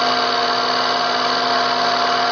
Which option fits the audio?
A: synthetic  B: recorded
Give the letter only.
B